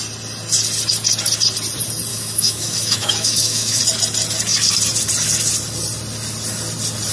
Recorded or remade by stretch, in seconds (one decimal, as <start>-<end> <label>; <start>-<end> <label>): 0.0-2.1 recorded; 2.1-3.8 remade; 3.8-7.1 recorded